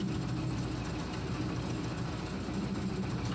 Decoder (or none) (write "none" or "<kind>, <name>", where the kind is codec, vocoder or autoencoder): none